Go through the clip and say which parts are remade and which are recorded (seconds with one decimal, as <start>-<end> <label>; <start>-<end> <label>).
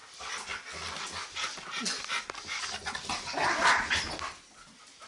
0.0-5.1 recorded